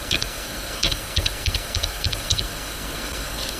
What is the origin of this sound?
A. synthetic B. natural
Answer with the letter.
A